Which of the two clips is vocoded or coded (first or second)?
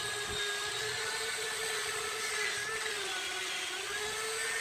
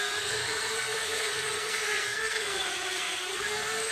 second